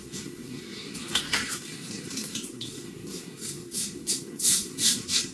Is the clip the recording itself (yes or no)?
no